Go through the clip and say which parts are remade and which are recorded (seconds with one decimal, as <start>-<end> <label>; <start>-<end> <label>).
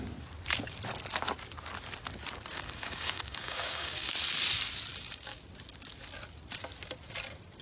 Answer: 0.0-2.5 recorded; 2.5-4.1 remade; 4.1-4.9 recorded; 4.9-5.4 remade; 5.4-7.6 recorded